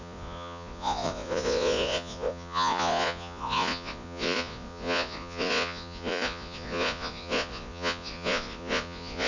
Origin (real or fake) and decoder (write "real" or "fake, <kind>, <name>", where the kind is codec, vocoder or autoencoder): fake, vocoder, Vocos